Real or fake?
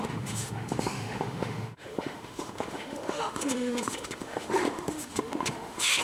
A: fake